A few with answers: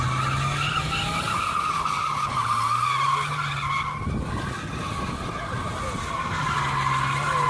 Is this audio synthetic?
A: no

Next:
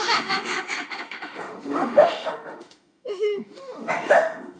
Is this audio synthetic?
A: yes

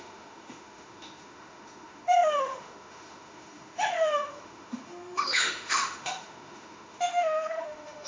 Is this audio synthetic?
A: yes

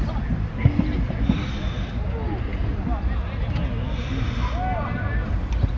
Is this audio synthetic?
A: no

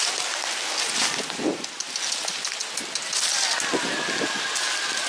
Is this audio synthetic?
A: no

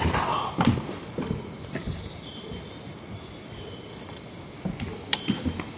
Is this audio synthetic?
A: no